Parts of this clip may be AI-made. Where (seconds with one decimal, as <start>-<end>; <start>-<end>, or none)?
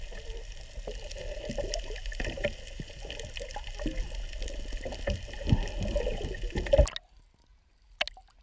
none